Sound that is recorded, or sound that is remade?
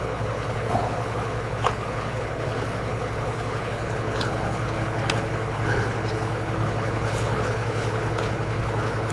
remade